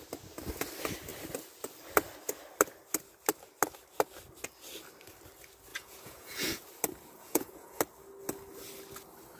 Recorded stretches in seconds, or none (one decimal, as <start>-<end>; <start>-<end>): 0.0-5.7; 6.6-7.2; 7.8-9.4